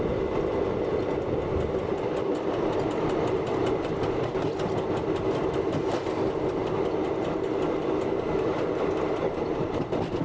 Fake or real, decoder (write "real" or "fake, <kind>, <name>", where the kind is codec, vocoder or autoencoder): real